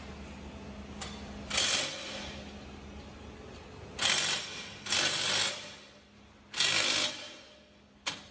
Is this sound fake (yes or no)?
no